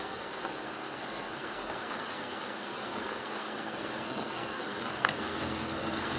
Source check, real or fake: fake